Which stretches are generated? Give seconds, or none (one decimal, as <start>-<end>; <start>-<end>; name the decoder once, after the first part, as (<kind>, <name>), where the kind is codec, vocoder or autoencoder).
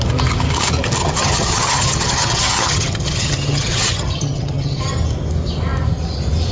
1.0-4.9 (vocoder, HiFi-GAN)